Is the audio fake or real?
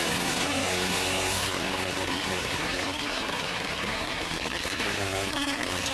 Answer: fake